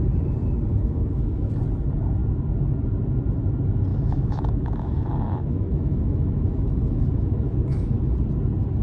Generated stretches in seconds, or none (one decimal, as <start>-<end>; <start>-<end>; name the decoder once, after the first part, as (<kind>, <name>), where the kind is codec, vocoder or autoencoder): 0.7-1.5 (autoencoder, DAC-VAE); 3.9-8.1